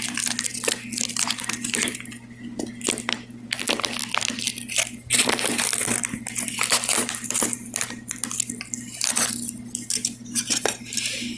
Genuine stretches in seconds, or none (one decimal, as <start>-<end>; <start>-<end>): 0.0-11.4